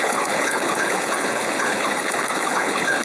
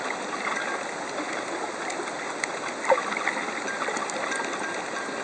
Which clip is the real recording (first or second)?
second